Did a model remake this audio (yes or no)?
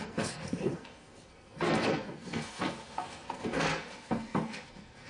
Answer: yes